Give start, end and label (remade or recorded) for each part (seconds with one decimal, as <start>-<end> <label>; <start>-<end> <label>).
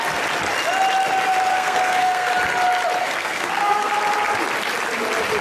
0.0-1.5 recorded; 1.5-2.3 remade; 2.3-3.0 recorded; 3.0-3.9 remade; 3.9-5.4 recorded